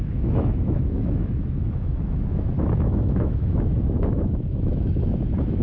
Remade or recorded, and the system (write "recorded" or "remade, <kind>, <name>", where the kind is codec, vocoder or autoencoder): remade, autoencoder, DAC-VAE